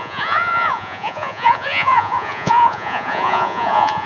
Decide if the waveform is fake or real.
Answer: fake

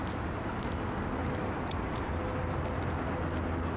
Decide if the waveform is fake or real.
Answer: real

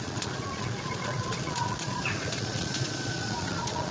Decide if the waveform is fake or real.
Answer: fake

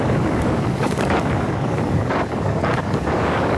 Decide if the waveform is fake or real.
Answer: fake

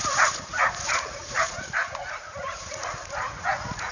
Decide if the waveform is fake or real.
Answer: fake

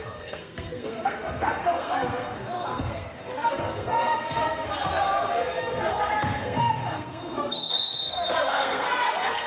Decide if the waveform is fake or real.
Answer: fake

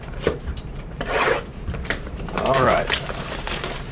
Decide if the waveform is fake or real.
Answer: fake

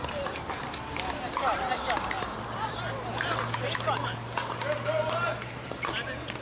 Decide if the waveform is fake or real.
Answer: real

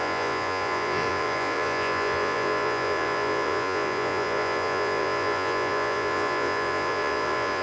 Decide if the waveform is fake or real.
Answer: fake